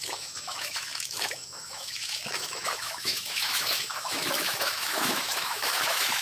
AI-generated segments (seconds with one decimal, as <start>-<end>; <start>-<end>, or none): 0.0-6.2